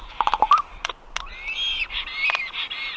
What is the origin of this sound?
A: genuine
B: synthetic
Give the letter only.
A